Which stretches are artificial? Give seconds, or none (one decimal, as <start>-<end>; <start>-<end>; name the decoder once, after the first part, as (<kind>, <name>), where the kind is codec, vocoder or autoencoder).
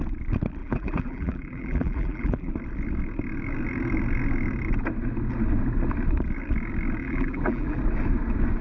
0.6-2.5 (vocoder, BigVGAN v2); 7.0-7.8